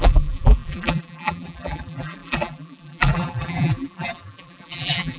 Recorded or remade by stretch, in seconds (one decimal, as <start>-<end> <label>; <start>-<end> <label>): 0.0-5.2 remade